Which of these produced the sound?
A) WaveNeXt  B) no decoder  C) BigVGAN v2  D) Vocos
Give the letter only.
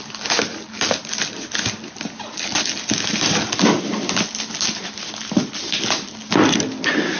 B